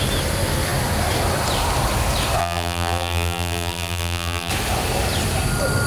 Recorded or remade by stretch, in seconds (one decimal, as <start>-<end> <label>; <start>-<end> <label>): 0.0-2.4 recorded; 2.4-4.5 remade; 4.5-5.9 recorded